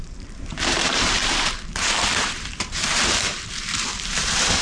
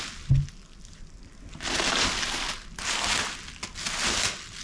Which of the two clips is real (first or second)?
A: second